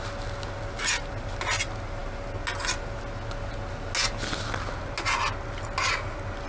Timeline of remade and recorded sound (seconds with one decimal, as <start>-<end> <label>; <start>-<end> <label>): 0.0-6.5 recorded